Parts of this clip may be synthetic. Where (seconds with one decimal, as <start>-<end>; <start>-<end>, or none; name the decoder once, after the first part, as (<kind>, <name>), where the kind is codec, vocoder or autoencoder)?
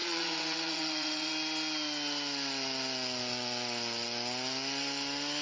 0.0-1.3 (vocoder, WaveNeXt)